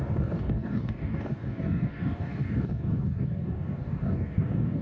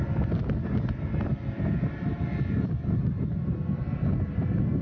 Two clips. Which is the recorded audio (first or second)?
second